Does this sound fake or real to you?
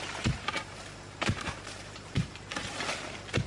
fake